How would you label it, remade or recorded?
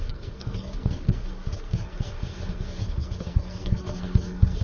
remade